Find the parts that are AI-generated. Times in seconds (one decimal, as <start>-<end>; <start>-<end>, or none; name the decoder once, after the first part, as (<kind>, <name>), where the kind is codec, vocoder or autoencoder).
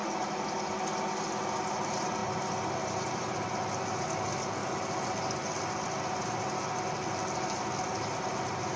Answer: 2.2-3.0 (vocoder, BigVGAN v2)